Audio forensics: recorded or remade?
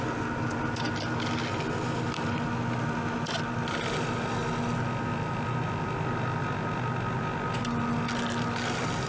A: recorded